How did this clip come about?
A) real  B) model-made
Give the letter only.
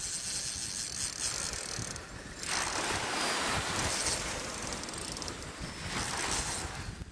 A